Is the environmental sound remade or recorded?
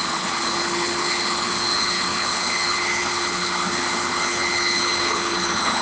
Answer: remade